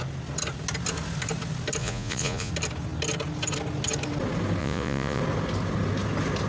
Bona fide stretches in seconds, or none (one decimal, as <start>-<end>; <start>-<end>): 0.0-1.8; 2.5-4.6; 5.2-6.5